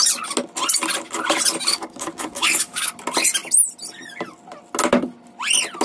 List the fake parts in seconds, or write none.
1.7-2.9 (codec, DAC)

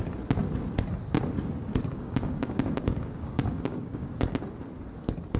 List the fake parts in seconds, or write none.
1.9-4.1 (codec, DAC)

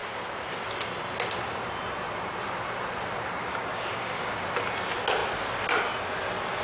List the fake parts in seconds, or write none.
3.4-4.3 (codec, DAC)

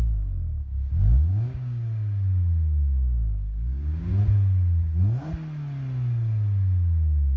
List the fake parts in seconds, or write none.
0.0-4.1 (codec, DAC)

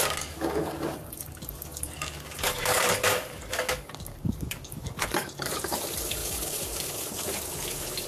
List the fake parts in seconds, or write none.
0.0-8.1 (codec, DAC)

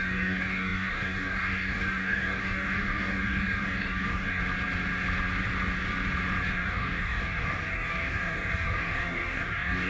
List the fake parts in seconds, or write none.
0.0-4.4 (codec, DAC); 6.5-9.9

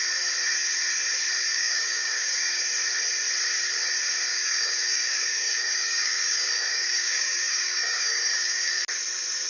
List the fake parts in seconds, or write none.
1.5-2.6 (codec, DAC); 4.3-8.8